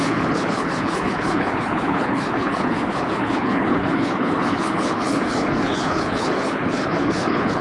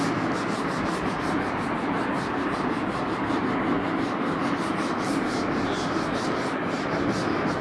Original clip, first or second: second